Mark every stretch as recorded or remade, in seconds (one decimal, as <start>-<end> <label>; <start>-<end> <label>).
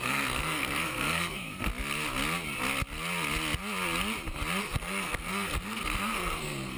0.0-1.7 remade; 1.7-4.6 recorded; 4.6-6.8 remade